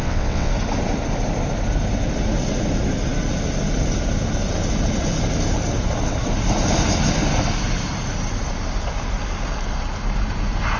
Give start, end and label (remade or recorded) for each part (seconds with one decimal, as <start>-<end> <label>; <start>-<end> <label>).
0.0-0.5 remade; 0.5-10.8 recorded